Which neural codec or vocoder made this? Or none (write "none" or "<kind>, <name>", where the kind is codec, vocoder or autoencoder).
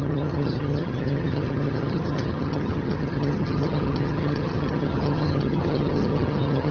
vocoder, HiFi-GAN